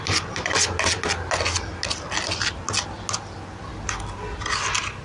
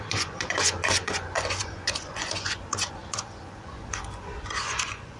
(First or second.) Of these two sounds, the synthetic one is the second